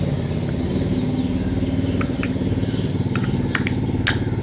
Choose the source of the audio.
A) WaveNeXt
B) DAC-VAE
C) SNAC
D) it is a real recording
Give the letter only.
D